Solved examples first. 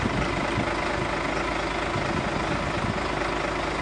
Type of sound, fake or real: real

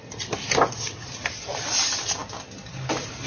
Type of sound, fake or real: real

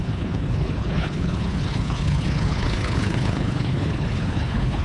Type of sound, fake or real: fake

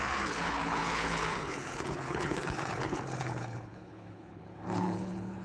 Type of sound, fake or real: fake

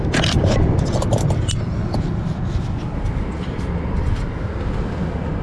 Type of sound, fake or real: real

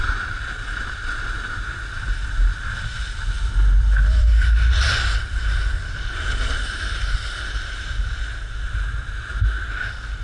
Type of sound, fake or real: real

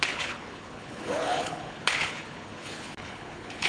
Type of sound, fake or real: fake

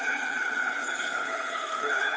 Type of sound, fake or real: fake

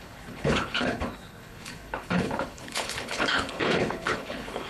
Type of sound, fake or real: fake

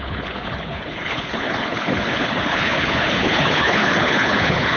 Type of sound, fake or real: fake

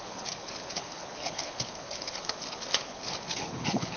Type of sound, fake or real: fake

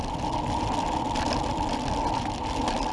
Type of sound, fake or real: real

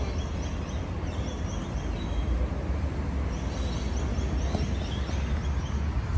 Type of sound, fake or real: real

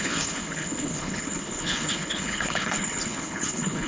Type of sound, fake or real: fake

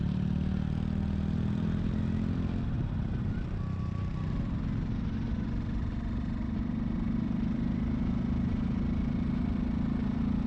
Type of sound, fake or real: real